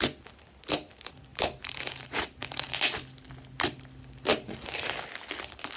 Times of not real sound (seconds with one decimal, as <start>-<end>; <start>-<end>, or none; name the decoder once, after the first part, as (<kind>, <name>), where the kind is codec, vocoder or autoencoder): 1.3-2.7 (vocoder, BigVGAN v2); 4.3-4.9